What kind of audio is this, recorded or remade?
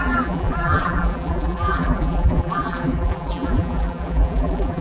remade